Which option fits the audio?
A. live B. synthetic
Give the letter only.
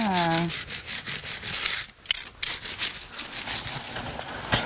A